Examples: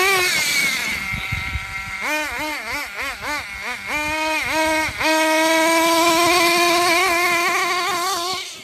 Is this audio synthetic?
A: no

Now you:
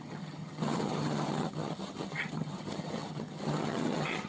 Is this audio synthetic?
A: yes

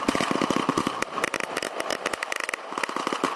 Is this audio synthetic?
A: no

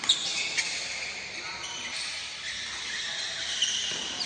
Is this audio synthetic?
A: no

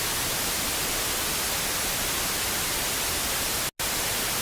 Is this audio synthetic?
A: no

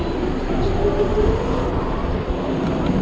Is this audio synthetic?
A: no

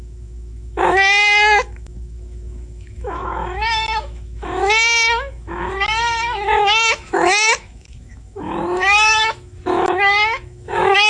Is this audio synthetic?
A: yes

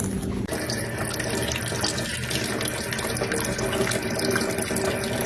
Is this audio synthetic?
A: no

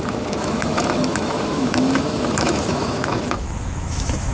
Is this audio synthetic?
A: yes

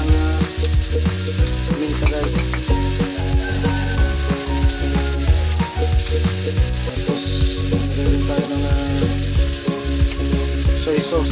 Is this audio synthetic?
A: no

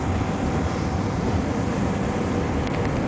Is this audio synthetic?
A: yes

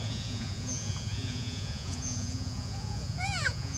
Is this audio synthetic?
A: yes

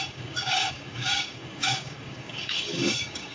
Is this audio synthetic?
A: yes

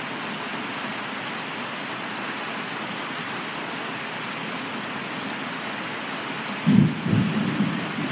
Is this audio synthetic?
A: no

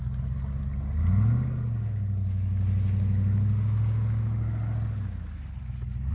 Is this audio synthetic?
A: no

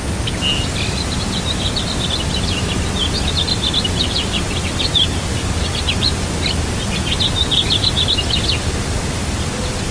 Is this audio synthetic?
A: no